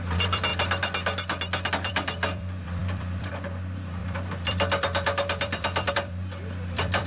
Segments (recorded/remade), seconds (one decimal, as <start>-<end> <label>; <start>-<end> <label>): 0.0-0.5 remade; 0.5-1.7 recorded; 1.7-7.1 remade